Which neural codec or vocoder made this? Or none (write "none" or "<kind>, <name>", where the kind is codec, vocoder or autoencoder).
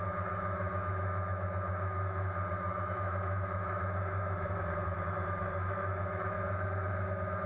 autoencoder, DAC-VAE